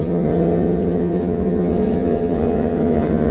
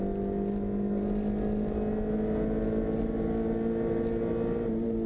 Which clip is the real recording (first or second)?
second